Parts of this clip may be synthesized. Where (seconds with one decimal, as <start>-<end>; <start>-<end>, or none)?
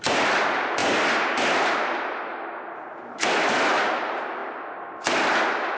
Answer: none